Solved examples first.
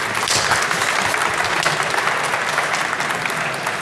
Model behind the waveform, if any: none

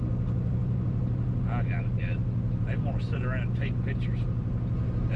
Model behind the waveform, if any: none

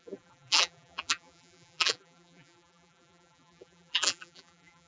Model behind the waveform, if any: vocoder, BigVGAN v2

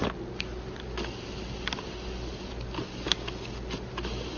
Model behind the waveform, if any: none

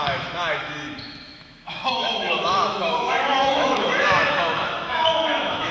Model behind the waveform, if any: autoencoder, DAC-VAE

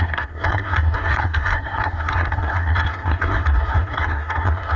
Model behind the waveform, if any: codec, SNAC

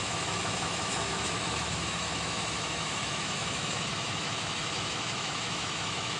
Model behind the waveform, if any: autoencoder, DAC-VAE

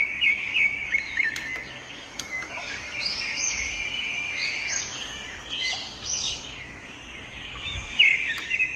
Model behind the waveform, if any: codec, DAC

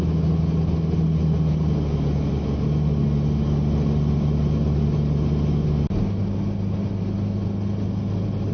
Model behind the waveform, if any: none